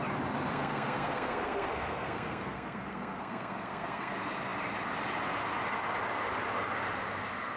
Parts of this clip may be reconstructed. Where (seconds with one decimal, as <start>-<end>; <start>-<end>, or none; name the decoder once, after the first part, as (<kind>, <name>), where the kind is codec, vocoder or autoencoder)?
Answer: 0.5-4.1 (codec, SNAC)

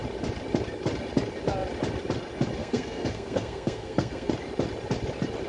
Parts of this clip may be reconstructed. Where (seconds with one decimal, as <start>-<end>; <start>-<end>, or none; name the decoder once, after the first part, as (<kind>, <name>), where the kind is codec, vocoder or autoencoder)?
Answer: 2.6-4.3 (codec, SNAC)

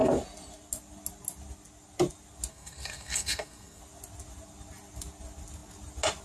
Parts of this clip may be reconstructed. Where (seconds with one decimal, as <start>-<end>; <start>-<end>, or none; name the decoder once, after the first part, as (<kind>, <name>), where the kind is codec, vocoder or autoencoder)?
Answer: 2.5-3.8 (codec, SNAC)

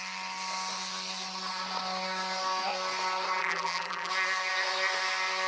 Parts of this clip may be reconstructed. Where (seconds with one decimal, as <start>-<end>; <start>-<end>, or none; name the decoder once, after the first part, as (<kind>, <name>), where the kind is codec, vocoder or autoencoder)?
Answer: 3.4-4.1 (vocoder, BigVGAN v2)